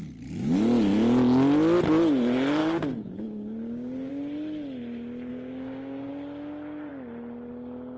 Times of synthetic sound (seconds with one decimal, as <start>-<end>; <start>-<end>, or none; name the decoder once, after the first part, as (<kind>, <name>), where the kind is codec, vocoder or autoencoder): 2.6-4.1 (codec, DAC); 5.3-6.1